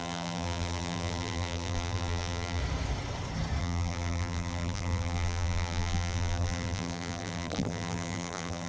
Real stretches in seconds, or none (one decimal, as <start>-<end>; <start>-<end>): 2.6-3.6